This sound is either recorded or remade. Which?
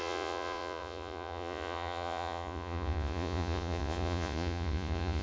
remade